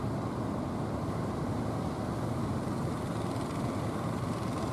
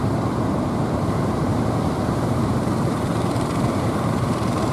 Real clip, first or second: first